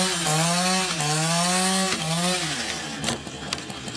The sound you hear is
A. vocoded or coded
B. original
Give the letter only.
B